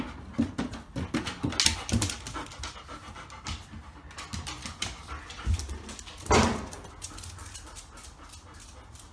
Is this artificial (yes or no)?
no